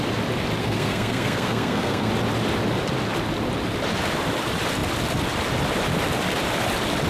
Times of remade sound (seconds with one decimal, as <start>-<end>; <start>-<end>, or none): 0.6-2.1